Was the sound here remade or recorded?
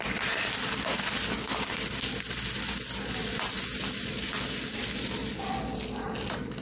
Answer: recorded